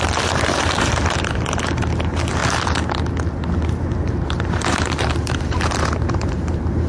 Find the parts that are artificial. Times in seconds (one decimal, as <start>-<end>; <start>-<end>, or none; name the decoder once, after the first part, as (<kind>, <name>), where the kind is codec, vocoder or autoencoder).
0.0-2.4 (vocoder, BigVGAN v2); 3.6-6.9